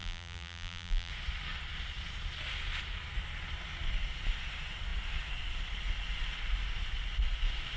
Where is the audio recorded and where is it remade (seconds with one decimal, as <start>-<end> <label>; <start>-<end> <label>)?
0.0-1.1 remade; 1.1-7.8 recorded